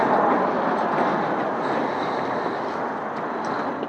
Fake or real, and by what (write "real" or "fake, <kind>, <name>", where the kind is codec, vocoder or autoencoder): real